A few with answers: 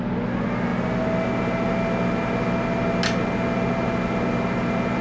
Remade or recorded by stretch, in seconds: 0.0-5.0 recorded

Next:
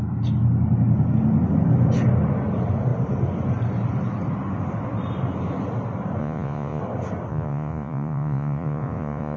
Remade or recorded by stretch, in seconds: 0.0-6.2 recorded; 6.2-6.8 remade; 6.8-7.3 recorded; 7.3-9.4 remade

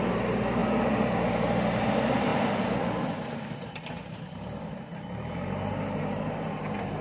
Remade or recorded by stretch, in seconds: 0.0-7.0 recorded

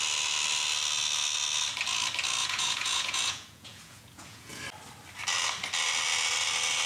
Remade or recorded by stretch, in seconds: 0.0-2.4 recorded; 2.4-4.6 remade; 4.6-6.9 recorded

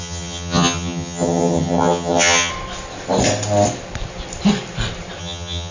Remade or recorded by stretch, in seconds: 0.0-2.5 remade; 2.5-5.2 recorded; 5.2-5.7 remade